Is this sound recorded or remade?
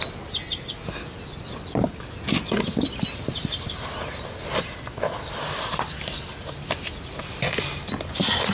recorded